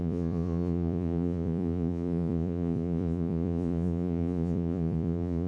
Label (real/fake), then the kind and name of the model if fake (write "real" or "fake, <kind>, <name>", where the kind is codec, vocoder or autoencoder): fake, vocoder, Vocos